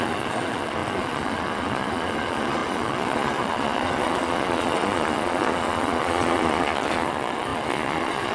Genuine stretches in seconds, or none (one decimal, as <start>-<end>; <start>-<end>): none